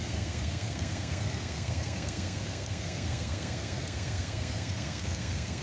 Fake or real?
fake